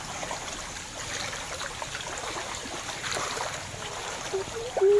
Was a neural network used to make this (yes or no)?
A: no